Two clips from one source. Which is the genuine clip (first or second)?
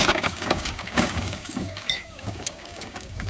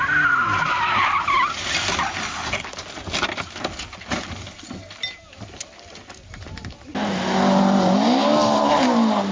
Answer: second